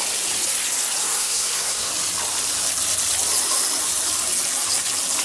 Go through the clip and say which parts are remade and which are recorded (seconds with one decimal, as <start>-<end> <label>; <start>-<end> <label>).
0.0-1.0 recorded; 1.0-1.9 remade; 1.9-5.2 recorded